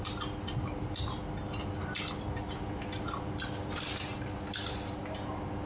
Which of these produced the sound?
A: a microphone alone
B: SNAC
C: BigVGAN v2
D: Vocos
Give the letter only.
A